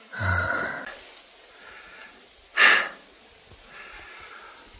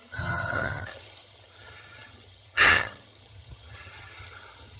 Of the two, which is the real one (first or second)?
first